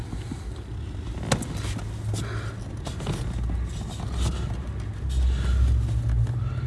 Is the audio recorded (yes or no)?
yes